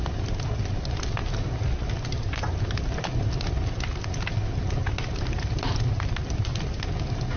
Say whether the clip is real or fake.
real